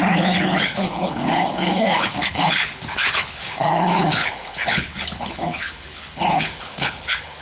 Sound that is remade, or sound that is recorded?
remade